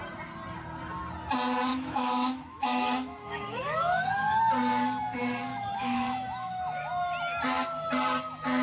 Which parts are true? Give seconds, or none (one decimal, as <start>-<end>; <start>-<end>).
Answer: 0.0-1.7; 4.4-5.5; 6.9-8.6